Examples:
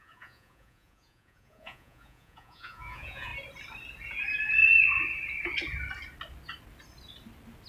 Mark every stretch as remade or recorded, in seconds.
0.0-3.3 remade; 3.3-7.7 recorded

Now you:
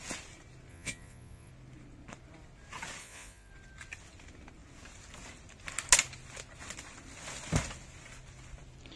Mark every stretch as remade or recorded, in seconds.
0.0-0.7 recorded; 0.7-1.5 remade; 1.5-3.0 recorded; 3.0-3.5 remade; 3.5-9.0 recorded